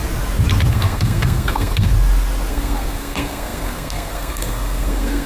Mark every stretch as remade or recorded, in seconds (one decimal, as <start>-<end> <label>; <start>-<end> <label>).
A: 0.0-0.7 recorded; 0.7-1.9 remade; 1.9-2.5 recorded; 2.5-5.3 remade